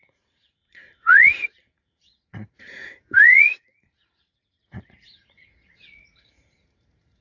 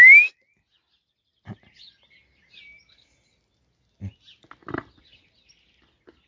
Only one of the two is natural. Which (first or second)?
second